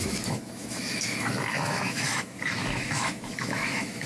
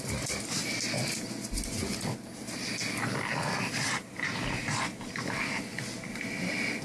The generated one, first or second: first